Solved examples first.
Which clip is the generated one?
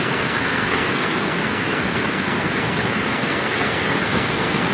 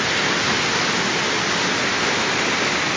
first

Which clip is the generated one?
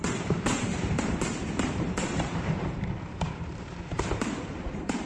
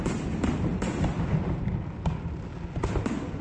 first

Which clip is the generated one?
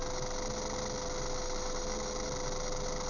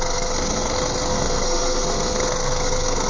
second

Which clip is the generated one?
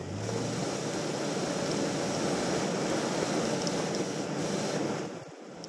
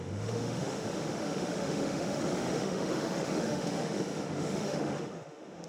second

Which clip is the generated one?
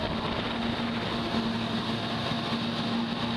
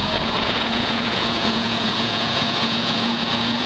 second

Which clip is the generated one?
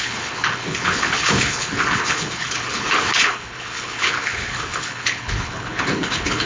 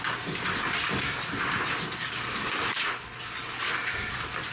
first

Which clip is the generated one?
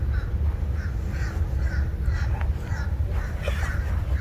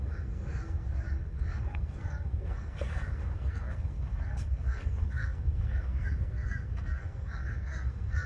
second